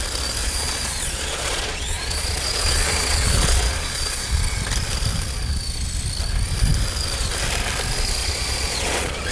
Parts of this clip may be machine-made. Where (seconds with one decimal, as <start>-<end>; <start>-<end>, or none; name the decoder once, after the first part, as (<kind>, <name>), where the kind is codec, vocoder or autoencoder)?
0.4-4.4 (vocoder, Vocos); 8.2-9.3